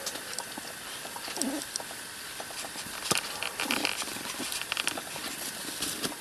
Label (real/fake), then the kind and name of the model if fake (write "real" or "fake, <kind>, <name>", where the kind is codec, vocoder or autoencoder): real